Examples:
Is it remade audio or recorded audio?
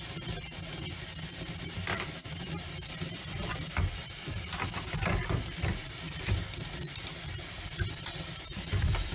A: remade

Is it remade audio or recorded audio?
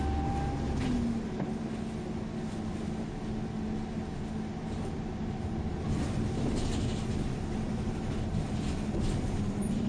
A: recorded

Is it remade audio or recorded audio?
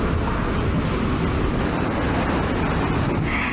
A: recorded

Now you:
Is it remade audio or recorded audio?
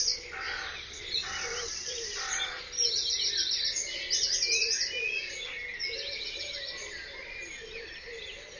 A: recorded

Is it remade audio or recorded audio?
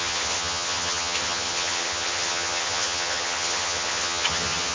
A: remade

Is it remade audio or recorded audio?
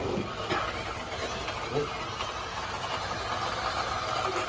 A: recorded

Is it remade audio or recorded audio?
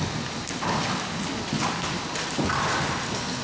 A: remade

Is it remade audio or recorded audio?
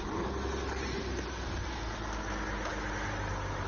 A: recorded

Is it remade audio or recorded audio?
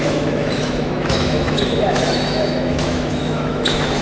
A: remade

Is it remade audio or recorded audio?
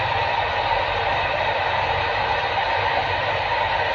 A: recorded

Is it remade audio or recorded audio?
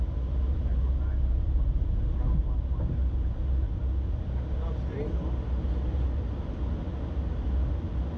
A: recorded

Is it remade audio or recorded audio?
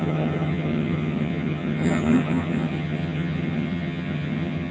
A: remade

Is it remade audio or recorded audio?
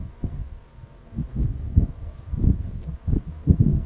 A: remade